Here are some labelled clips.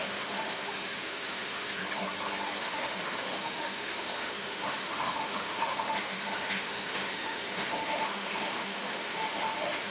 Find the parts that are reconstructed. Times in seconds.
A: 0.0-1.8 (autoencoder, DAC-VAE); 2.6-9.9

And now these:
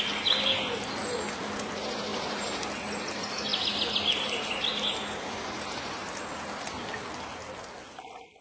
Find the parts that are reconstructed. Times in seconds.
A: none

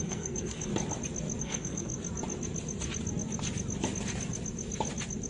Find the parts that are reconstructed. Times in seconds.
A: 0.0-0.7 (codec, SNAC); 1.4-1.9

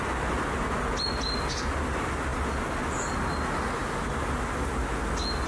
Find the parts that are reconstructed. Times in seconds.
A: none